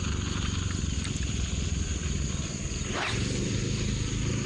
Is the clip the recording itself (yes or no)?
yes